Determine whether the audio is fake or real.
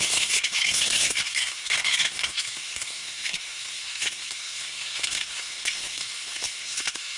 fake